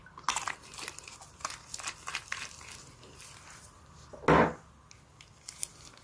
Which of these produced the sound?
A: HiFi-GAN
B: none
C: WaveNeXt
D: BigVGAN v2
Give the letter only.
B